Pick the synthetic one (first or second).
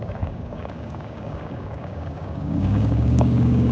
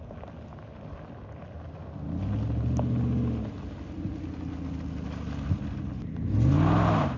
first